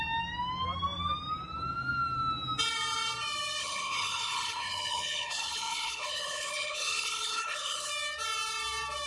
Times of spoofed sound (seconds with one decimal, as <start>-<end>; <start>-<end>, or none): 3.6-7.9